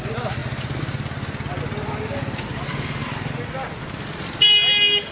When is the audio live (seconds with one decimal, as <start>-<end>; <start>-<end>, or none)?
0.0-5.1